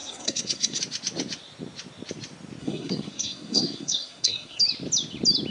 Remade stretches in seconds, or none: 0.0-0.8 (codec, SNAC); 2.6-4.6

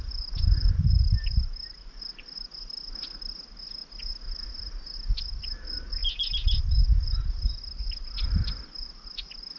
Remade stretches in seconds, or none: none

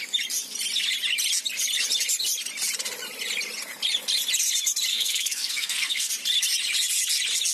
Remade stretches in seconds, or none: 4.9-6.1 (codec, SNAC)

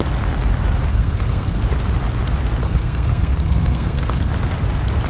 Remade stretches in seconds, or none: 0.9-1.6 (codec, SNAC); 2.6-4.3